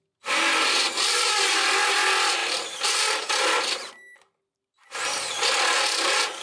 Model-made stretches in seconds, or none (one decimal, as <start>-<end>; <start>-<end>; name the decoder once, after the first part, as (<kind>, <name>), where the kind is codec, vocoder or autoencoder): none